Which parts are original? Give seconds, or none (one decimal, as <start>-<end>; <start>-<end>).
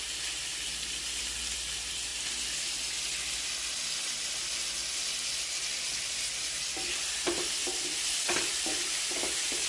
0.0-9.7